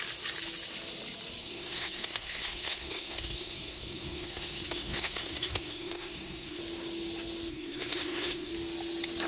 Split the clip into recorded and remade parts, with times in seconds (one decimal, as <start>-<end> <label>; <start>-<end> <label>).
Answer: 0.0-1.4 recorded; 1.4-6.6 remade; 6.6-7.5 recorded; 7.5-8.5 remade; 8.5-9.3 recorded